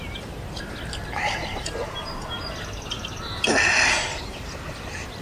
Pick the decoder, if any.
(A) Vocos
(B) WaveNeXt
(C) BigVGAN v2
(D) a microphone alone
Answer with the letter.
D